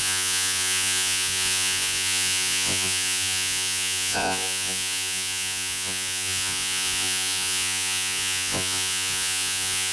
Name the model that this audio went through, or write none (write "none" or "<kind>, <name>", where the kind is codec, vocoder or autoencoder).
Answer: vocoder, Vocos